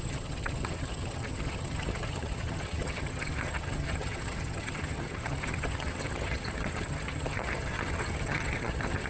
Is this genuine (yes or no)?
no